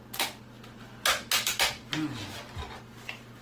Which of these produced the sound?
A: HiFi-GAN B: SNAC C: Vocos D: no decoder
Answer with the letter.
D